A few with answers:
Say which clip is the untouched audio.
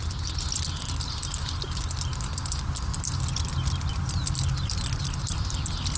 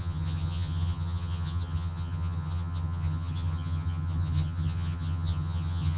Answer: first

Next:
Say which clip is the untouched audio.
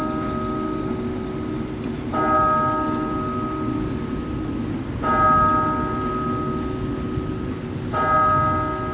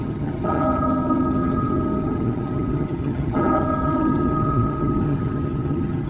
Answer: first